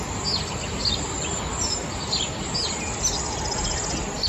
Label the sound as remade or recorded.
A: recorded